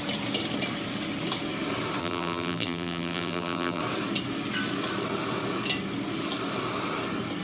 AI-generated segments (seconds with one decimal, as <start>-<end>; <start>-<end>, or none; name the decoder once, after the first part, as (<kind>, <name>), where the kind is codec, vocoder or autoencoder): 2.0-3.8 (vocoder, BigVGAN v2)